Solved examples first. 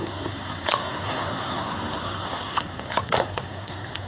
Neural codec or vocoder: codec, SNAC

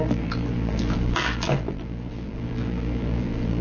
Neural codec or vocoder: vocoder, BigVGAN v2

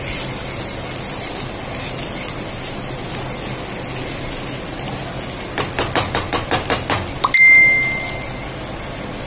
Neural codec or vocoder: none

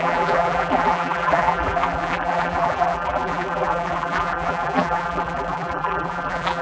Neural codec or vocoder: vocoder, BigVGAN v2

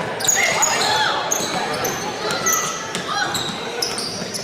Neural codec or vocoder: none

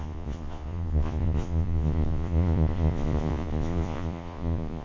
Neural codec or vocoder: vocoder, Vocos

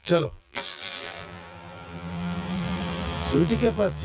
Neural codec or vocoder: vocoder, BigVGAN v2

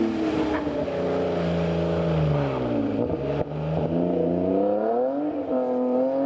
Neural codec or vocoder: none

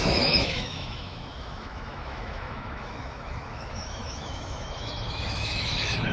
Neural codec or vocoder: autoencoder, DAC-VAE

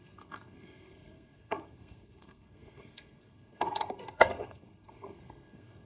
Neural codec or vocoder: codec, SNAC